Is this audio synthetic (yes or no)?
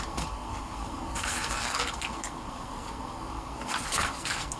yes